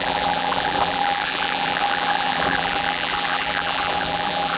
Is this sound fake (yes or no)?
yes